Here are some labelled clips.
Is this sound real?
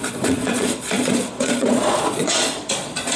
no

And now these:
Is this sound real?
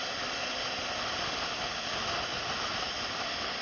yes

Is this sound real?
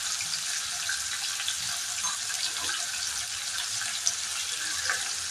yes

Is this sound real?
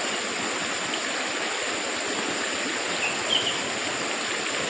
yes